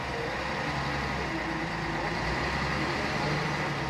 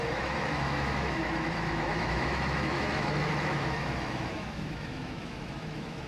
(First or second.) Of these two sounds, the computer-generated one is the second